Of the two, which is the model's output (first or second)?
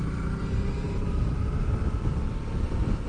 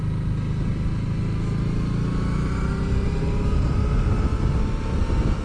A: first